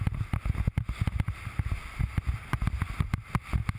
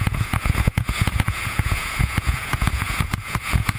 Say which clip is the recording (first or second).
first